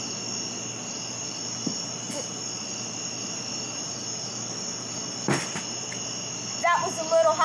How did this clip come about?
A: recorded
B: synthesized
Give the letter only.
A